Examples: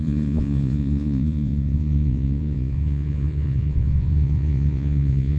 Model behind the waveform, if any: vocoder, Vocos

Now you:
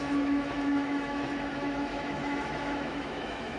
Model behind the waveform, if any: autoencoder, DAC-VAE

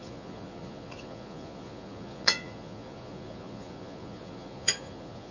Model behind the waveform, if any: vocoder, Vocos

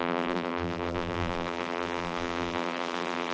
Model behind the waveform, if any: vocoder, BigVGAN v2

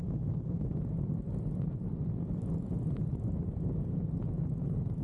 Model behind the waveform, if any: none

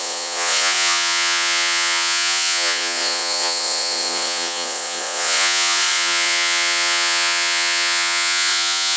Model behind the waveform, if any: vocoder, Vocos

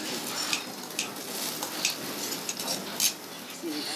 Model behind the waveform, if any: none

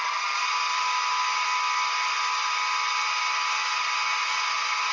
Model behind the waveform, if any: none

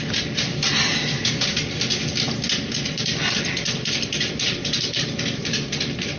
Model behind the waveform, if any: none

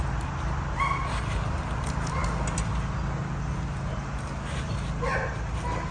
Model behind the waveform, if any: none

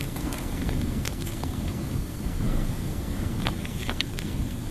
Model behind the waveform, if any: codec, SNAC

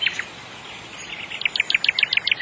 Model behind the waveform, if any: none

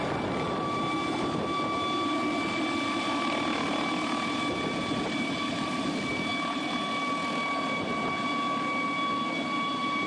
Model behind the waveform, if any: none